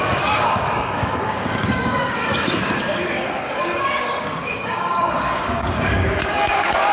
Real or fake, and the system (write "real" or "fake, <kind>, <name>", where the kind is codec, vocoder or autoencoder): fake, codec, DAC